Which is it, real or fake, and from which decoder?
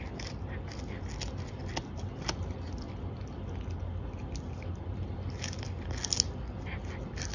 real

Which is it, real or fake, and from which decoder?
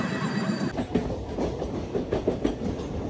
real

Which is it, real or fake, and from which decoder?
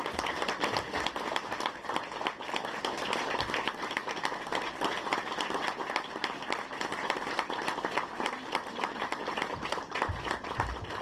real